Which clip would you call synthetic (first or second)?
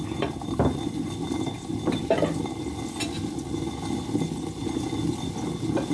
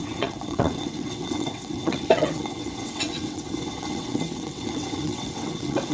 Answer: second